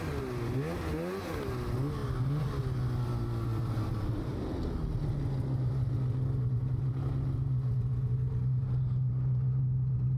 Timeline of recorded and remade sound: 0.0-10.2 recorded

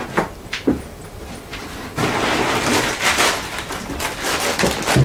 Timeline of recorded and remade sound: 0.0-1.5 recorded; 1.5-4.5 remade; 4.5-5.0 recorded

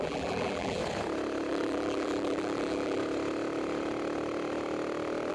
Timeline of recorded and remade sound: 0.0-0.8 remade; 0.8-1.5 recorded; 1.5-3.0 remade; 3.0-5.3 recorded

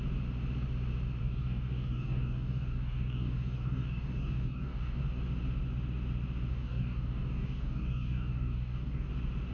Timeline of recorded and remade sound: 0.0-1.2 recorded; 1.2-5.0 remade; 5.0-6.5 recorded; 6.5-9.1 remade; 9.1-9.5 recorded

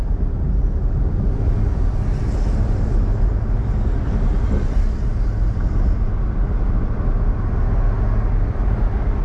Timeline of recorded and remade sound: 0.0-9.2 recorded